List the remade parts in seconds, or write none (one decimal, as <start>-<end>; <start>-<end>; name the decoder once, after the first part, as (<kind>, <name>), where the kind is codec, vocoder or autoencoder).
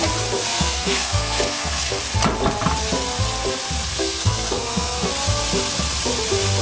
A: 0.5-2.0 (codec, SNAC); 3.9-5.1